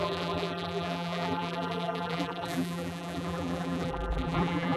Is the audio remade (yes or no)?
yes